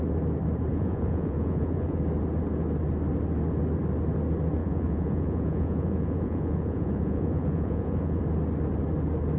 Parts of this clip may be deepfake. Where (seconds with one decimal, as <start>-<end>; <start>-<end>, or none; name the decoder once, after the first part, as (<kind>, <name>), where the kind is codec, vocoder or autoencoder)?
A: 0.7-2.0 (vocoder, Vocos); 4.6-8.2